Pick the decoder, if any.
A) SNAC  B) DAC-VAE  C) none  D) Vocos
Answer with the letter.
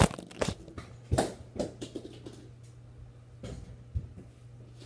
C